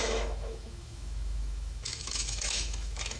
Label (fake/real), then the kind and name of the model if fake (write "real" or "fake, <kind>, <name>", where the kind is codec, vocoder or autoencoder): fake, autoencoder, DAC-VAE